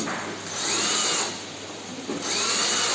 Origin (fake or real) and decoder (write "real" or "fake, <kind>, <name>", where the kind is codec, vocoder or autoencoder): real